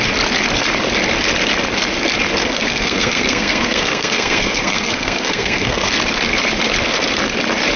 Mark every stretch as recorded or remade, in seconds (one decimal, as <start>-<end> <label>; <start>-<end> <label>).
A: 0.0-2.4 recorded; 2.4-5.9 remade; 5.9-7.8 recorded